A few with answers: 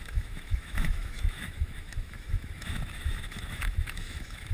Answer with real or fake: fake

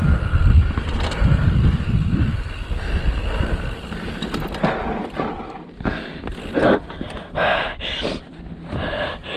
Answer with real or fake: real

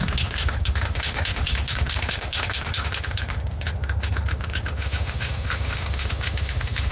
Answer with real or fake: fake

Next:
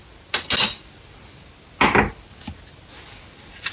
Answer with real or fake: real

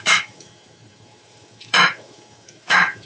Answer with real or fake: fake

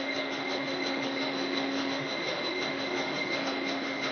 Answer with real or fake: fake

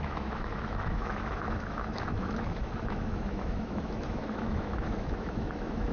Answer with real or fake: fake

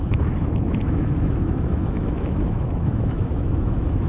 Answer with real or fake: fake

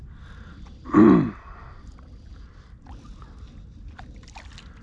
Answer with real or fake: real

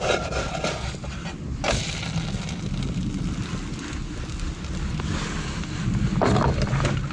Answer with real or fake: real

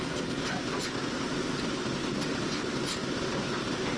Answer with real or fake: real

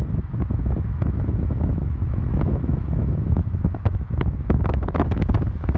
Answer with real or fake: fake